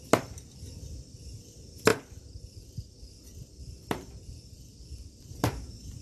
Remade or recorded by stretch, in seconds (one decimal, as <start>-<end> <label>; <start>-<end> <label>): 0.0-1.9 recorded; 1.9-5.3 remade; 5.3-6.0 recorded